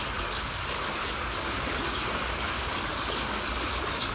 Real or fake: fake